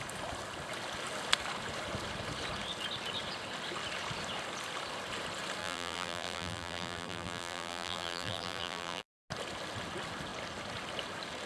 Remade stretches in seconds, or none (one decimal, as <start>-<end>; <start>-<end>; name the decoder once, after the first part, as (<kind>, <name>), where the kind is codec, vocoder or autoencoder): 5.6-9.1 (vocoder, BigVGAN v2)